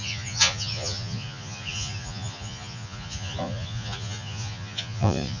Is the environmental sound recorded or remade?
remade